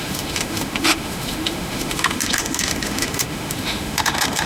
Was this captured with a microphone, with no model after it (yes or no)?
no